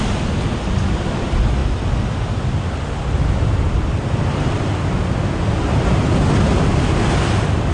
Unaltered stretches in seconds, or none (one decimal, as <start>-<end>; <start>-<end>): 0.0-7.7